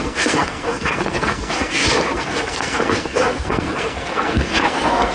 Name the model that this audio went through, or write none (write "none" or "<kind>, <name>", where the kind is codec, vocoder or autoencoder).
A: codec, SNAC